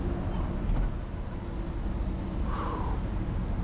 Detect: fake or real real